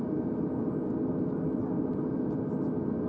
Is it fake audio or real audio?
real